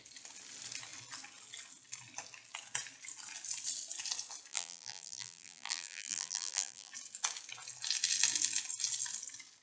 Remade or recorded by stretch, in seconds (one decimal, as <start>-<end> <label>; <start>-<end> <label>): 0.0-4.5 recorded; 4.5-6.9 remade; 6.9-9.6 recorded